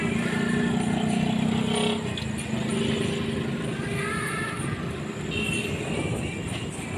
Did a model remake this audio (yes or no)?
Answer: no